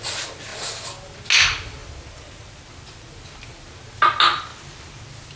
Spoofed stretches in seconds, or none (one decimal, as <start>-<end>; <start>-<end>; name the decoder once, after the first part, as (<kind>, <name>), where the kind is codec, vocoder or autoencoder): 1.8-2.6 (vocoder, BigVGAN v2); 4.5-5.0